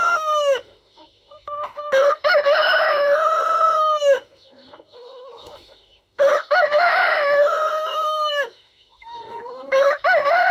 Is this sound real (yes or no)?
no